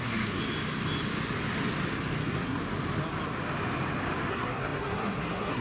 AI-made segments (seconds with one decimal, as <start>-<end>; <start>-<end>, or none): 0.0-0.4; 2.2-2.6; 4.3-5.6